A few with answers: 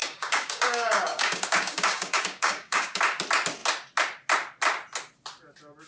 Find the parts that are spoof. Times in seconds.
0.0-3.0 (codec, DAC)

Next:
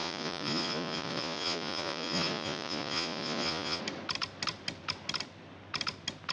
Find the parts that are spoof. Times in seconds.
0.0-3.8 (vocoder, Vocos)

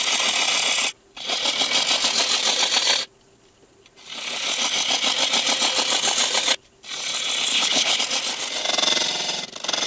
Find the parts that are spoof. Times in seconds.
7.5-8.0 (codec, HILCodec)

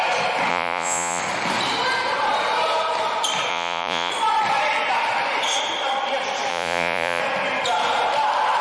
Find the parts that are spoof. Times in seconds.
0.5-1.2 (vocoder, Vocos); 3.5-4.1; 6.5-7.2

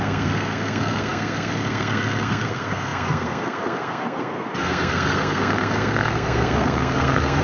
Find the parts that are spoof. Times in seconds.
0.0-7.4 (codec, SNAC)

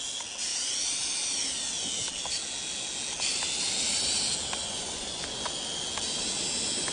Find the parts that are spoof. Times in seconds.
4.6-5.2 (vocoder, Vocos)